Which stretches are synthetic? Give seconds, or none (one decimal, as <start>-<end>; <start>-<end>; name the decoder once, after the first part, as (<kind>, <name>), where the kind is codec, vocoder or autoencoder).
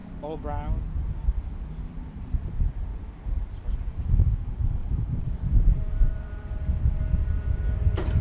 2.9-3.7 (vocoder, BigVGAN v2); 4.8-6.6